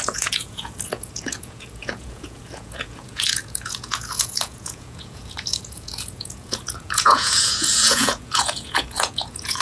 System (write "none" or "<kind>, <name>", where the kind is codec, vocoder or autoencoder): vocoder, Vocos